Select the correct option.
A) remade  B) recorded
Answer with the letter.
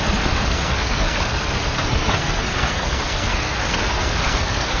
A